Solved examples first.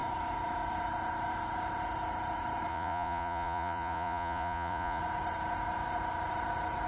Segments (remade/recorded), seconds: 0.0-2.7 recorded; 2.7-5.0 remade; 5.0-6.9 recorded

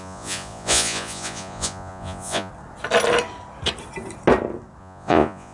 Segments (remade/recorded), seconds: 0.0-2.5 remade; 2.5-4.8 recorded; 4.8-5.5 remade

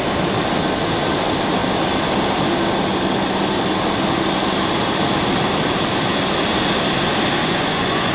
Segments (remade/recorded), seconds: 0.0-7.4 recorded; 7.4-8.1 remade

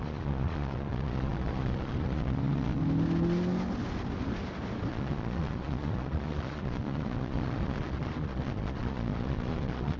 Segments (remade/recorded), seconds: 0.0-2.8 remade; 2.8-4.9 recorded; 4.9-10.0 remade

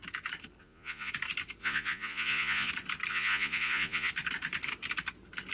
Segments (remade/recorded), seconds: 0.0-0.6 recorded; 0.6-1.1 remade; 1.1-1.6 recorded; 1.6-2.7 remade; 2.7-3.1 recorded; 3.1-4.1 remade; 4.1-5.5 recorded

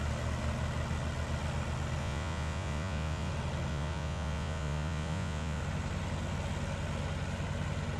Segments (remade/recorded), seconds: 0.0-2.0 recorded; 2.0-3.3 remade; 3.3-3.7 recorded; 3.7-5.6 remade; 5.6-8.0 recorded